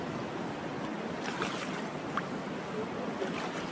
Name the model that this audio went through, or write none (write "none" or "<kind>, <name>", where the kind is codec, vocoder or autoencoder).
none